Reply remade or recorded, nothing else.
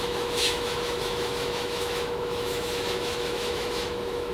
remade